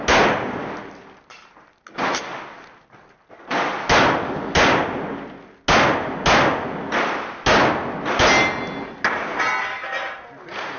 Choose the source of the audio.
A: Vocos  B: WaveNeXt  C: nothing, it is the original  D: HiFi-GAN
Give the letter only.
C